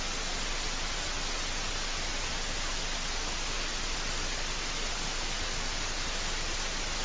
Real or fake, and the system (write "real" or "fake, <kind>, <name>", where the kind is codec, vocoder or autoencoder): real